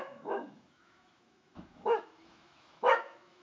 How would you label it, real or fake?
fake